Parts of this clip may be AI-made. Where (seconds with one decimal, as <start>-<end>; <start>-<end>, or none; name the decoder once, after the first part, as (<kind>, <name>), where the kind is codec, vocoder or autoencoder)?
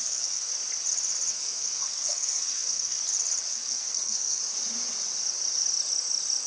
0.0-0.5 (codec, SNAC); 1.3-3.0; 3.5-4.4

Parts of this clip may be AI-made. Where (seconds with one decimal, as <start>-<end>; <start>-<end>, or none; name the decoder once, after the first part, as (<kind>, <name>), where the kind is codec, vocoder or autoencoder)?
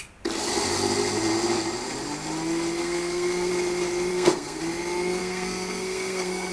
2.8-3.5 (codec, SNAC); 4.1-4.6; 5.2-6.5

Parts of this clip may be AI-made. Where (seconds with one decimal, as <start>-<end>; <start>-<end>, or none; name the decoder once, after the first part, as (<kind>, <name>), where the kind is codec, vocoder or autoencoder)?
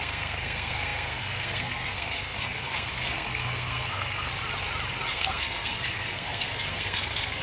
0.0-4.3 (codec, SNAC); 5.1-7.4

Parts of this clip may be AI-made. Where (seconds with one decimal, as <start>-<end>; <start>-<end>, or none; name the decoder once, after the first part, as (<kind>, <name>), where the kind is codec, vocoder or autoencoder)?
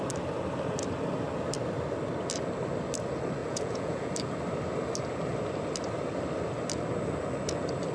3.4-4.1 (vocoder, Vocos)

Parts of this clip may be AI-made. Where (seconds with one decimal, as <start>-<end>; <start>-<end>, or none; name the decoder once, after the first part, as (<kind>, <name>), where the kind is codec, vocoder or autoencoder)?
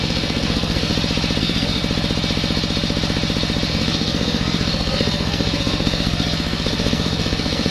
0.0-0.9 (codec, SNAC); 1.4-1.8; 3.7-7.7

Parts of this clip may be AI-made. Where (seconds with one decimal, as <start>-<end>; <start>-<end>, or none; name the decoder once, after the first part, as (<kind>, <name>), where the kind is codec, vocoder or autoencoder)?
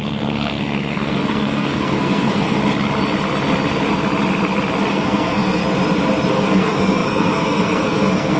0.0-2.6 (codec, SNAC); 4.9-5.6; 6.3-8.4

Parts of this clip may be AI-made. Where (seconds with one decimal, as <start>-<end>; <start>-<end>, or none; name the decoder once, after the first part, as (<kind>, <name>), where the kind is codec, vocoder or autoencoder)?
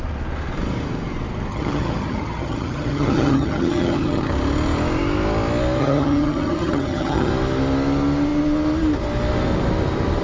1.5-4.3 (vocoder, HiFi-GAN); 5.8-7.3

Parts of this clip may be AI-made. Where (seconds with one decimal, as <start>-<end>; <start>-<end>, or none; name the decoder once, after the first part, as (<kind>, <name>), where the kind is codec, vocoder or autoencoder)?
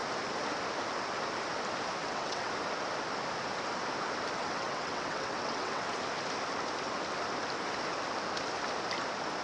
2.0-2.5 (vocoder, WaveNeXt); 4.4-5.8